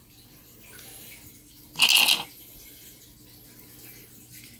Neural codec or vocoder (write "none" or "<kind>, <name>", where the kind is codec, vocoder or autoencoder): none